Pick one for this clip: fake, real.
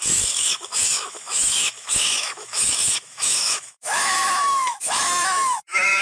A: fake